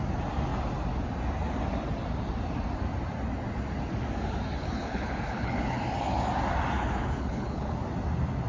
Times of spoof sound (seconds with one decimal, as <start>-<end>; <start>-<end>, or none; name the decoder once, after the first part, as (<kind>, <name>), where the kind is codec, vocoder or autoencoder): 4.6-5.8 (codec, HILCodec); 6.8-7.7